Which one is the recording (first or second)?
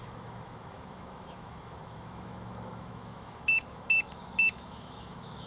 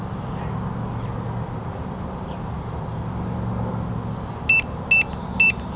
second